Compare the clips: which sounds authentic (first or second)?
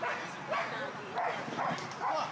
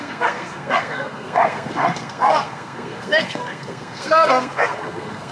first